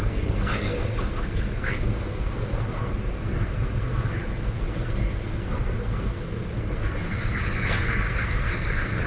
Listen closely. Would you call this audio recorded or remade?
remade